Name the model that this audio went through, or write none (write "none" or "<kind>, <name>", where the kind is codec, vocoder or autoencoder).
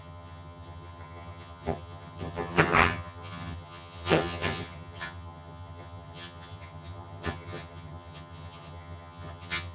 vocoder, HiFi-GAN